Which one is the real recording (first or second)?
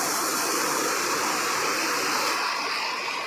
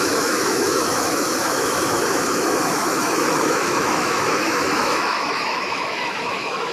first